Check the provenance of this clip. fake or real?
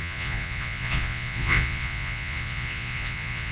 fake